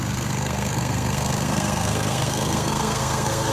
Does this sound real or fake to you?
fake